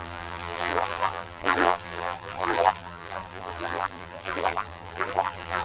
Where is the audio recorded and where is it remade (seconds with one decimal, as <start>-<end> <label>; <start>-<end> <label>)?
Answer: 0.0-5.6 remade